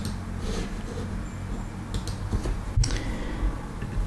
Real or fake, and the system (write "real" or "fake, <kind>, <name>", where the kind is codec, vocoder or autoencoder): real